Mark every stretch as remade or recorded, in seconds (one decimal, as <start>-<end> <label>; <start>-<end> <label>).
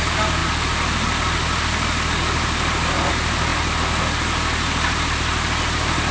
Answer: 0.0-6.1 recorded